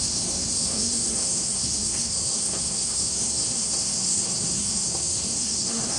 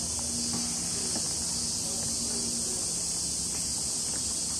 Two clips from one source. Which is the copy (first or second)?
first